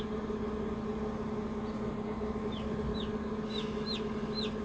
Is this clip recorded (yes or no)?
yes